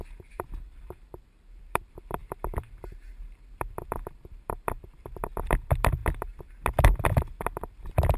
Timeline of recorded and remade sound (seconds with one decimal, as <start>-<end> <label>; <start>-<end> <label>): 0.0-6.0 remade; 6.0-7.0 recorded; 7.0-8.2 remade